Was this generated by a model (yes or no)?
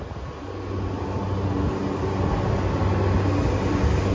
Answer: no